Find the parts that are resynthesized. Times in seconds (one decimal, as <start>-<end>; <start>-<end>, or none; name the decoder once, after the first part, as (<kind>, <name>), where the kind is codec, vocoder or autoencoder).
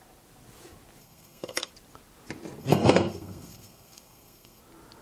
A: 1.0-1.7 (codec, SNAC); 2.6-4.6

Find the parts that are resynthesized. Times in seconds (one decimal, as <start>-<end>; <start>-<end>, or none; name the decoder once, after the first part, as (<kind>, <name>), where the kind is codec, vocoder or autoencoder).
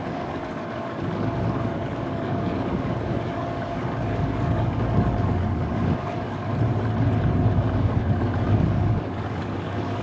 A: 0.0-6.5 (codec, DAC); 7.5-10.0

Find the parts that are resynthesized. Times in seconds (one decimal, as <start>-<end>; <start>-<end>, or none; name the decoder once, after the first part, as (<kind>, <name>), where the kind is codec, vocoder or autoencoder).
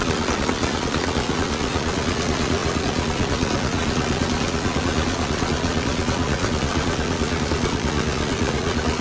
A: 0.0-9.0 (vocoder, Vocos)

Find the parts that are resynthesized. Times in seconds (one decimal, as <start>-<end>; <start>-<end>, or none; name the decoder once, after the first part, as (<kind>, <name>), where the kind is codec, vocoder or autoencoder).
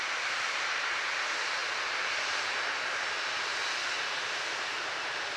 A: 0.0-1.6 (vocoder, BigVGAN v2); 4.8-5.4